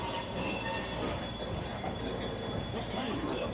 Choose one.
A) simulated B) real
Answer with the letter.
B